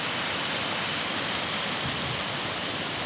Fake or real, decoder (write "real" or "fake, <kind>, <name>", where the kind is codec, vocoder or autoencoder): real